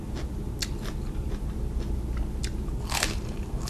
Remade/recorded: recorded